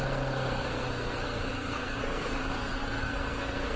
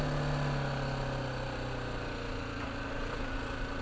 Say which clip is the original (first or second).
second